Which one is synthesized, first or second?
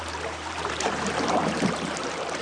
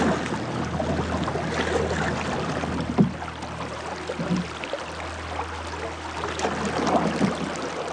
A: first